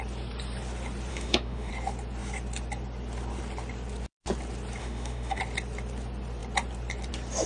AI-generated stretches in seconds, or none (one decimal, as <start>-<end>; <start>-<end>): 1.1-1.7; 4.8-5.4